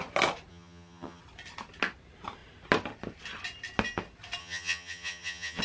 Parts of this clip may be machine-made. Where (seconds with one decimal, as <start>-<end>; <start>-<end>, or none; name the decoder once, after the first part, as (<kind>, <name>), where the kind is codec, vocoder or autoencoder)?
0.5-1.2 (vocoder, HiFi-GAN); 4.4-5.6